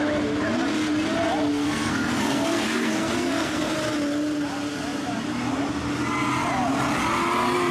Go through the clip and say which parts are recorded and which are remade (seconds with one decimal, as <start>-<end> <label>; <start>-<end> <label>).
0.0-1.5 recorded; 1.5-3.7 remade; 3.7-7.7 recorded

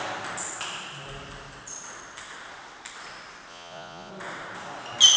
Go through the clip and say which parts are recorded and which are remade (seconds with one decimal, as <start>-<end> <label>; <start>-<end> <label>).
0.0-3.5 recorded; 3.5-4.1 remade; 4.1-5.2 recorded

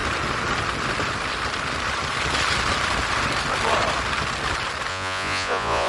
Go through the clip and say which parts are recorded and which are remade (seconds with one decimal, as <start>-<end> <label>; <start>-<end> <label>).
0.0-4.9 recorded; 4.9-5.9 remade

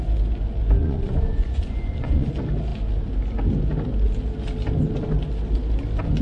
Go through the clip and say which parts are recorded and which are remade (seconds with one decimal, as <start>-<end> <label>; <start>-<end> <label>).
0.0-0.8 recorded; 0.8-2.3 remade; 2.3-6.2 recorded

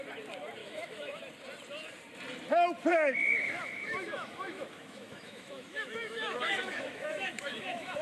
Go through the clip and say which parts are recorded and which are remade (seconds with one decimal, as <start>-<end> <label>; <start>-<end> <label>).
0.0-0.6 recorded; 0.6-1.2 remade; 1.2-2.9 recorded; 2.9-8.0 remade